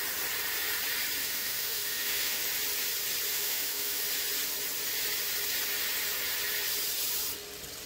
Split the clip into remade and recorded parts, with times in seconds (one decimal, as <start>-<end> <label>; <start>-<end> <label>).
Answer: 0.0-1.2 recorded; 1.2-2.4 remade; 2.4-3.3 recorded; 3.3-4.0 remade; 4.0-7.9 recorded